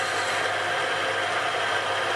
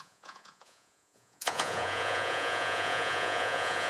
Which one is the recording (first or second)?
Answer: first